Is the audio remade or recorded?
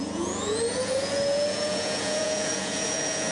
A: remade